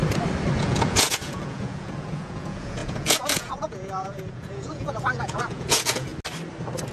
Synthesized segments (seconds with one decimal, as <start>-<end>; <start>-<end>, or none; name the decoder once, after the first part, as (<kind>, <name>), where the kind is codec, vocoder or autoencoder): 0.6-6.1 (vocoder, Vocos)